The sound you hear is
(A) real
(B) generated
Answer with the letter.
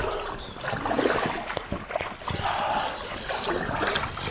A